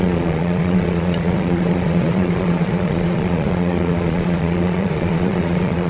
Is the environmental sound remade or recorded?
remade